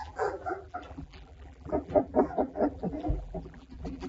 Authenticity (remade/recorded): remade